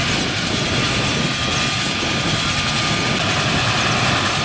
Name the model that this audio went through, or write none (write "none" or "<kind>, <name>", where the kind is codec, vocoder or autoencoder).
none